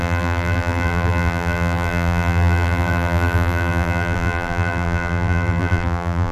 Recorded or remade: remade